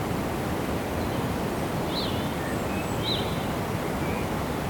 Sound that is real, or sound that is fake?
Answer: real